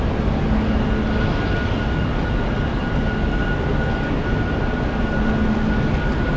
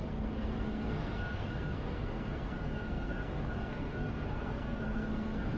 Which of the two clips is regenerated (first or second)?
second